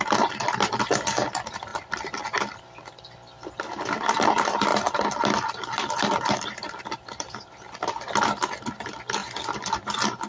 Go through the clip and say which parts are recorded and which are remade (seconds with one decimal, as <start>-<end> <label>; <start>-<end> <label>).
0.0-4.7 recorded; 4.7-6.8 remade; 6.8-9.2 recorded; 9.2-9.9 remade; 9.9-10.3 recorded